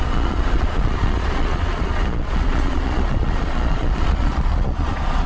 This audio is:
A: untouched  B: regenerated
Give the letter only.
B